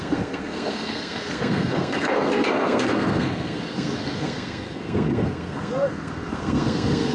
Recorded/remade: remade